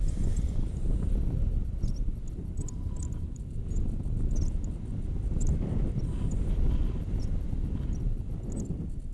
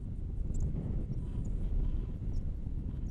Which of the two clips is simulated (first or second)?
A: first